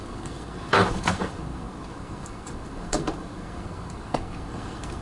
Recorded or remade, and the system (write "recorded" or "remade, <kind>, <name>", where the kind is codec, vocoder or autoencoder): remade, codec, SNAC